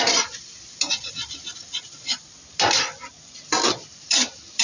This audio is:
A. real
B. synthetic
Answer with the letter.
B